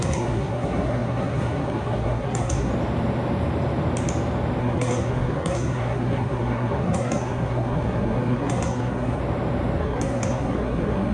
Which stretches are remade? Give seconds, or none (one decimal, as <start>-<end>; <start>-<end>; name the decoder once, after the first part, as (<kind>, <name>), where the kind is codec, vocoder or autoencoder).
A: 0.0-2.7 (codec, SNAC); 4.6-9.2; 9.8-11.1